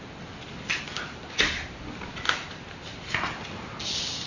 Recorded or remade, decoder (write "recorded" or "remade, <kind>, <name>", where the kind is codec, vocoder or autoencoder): recorded